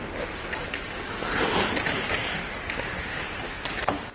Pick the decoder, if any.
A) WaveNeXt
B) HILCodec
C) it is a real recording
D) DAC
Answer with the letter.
C